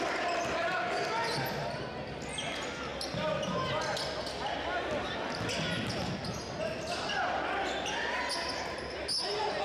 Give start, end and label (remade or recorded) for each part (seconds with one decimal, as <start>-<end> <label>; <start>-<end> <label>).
0.0-2.9 recorded; 2.9-3.5 remade; 3.5-9.6 recorded